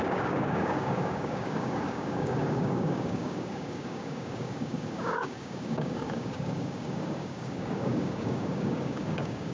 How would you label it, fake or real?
fake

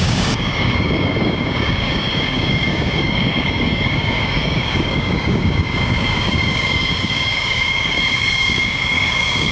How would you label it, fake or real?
fake